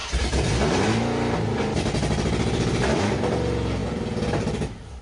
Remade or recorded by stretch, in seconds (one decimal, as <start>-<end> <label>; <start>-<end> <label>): 0.0-3.0 remade; 3.0-3.8 recorded; 3.8-5.0 remade

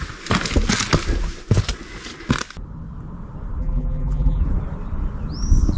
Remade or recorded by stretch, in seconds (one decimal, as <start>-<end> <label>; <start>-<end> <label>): 0.0-3.6 recorded; 3.6-4.4 remade; 4.4-5.8 recorded